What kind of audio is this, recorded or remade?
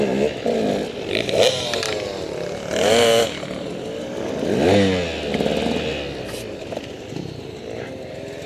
recorded